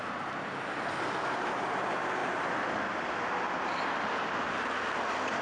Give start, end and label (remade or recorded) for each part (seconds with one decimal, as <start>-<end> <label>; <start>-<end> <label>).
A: 0.0-5.4 recorded